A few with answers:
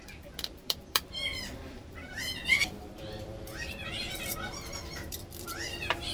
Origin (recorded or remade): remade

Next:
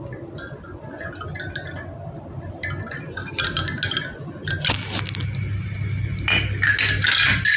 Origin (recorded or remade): recorded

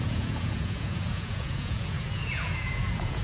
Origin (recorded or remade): remade